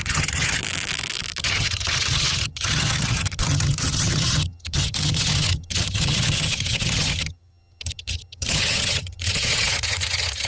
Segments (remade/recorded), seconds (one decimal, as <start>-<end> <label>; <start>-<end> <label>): 0.0-0.6 remade; 0.6-1.4 recorded; 1.4-10.5 remade